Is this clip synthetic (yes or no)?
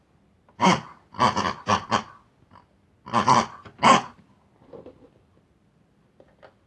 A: no